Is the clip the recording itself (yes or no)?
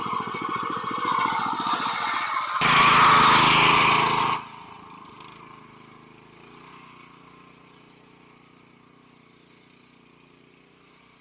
yes